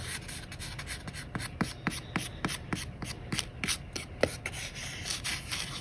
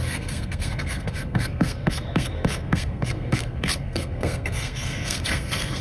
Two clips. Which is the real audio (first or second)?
first